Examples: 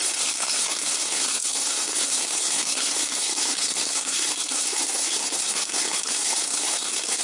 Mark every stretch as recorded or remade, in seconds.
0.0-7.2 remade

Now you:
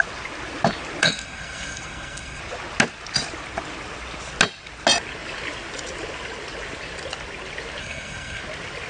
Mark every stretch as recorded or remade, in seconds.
0.0-1.0 recorded; 1.0-2.4 remade; 2.4-7.8 recorded; 7.8-8.4 remade; 8.4-8.9 recorded

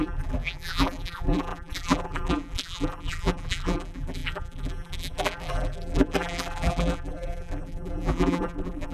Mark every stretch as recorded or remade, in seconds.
0.0-8.9 remade